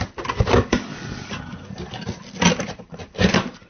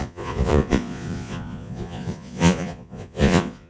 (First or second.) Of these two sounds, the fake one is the second